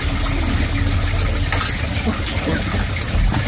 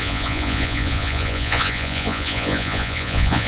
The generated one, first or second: second